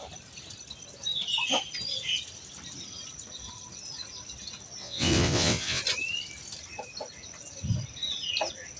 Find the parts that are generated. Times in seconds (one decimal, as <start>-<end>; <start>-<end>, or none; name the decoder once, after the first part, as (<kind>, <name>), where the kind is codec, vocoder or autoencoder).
4.8-5.8 (vocoder, WaveNeXt)